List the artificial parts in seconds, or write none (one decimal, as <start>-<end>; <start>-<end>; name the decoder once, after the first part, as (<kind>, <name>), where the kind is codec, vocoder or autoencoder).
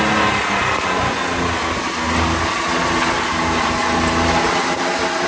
none